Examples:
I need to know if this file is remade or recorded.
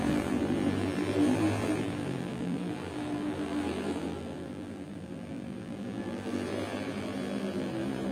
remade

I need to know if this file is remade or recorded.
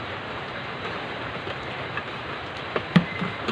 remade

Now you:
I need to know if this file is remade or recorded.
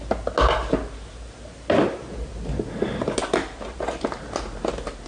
recorded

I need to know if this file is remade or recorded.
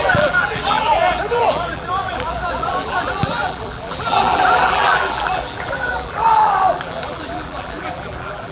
remade